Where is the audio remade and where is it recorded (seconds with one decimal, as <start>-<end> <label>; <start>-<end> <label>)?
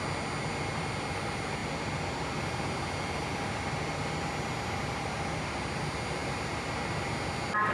0.0-7.7 recorded